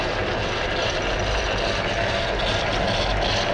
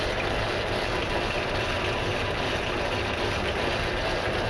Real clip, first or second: first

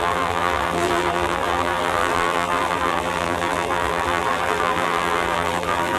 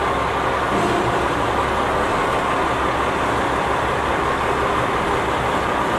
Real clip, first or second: second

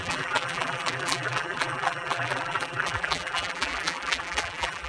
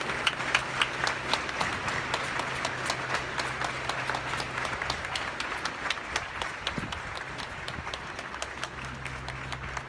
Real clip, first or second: second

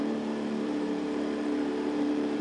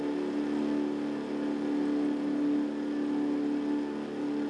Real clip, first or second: second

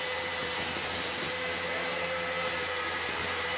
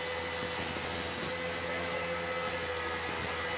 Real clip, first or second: second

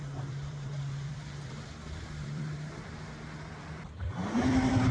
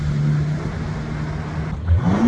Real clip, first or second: second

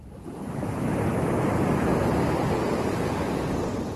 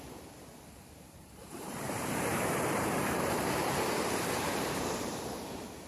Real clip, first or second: first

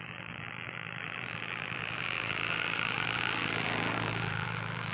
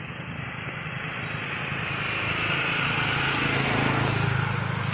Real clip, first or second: second